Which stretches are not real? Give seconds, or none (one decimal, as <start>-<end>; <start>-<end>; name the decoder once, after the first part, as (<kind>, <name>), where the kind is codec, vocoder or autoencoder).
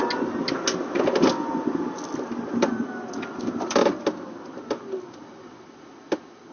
2.1-3.8 (vocoder, BigVGAN v2)